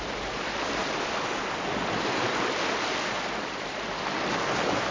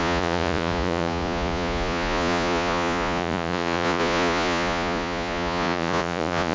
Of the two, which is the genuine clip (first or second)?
first